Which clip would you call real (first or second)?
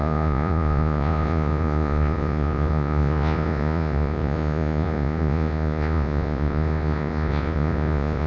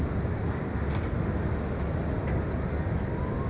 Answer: second